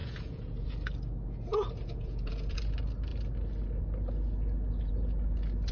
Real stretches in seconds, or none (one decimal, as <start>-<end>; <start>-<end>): 0.7-1.5; 2.6-5.7